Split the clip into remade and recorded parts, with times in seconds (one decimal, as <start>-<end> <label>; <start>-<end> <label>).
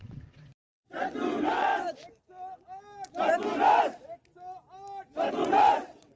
0.0-1.7 remade; 1.7-5.3 recorded; 5.3-6.2 remade